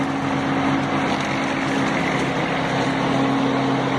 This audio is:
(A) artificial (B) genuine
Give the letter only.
B